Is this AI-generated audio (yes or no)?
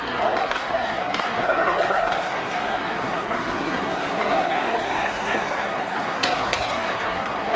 yes